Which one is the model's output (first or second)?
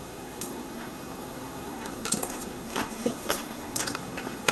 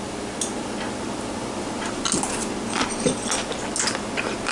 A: first